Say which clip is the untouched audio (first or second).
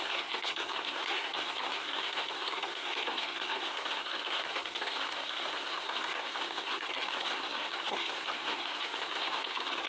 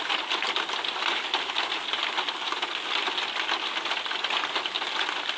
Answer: second